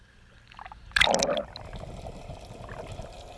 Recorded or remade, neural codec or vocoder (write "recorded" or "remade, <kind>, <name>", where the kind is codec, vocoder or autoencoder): recorded